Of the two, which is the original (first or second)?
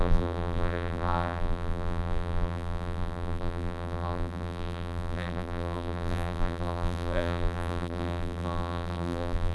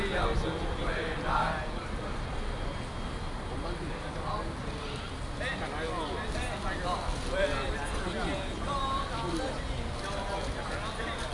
second